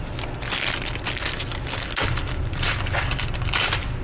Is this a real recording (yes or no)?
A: yes